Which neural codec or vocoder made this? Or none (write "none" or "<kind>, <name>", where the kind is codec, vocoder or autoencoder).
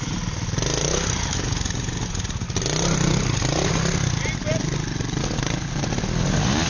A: none